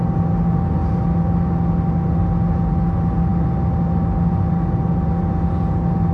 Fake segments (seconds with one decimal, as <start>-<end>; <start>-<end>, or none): none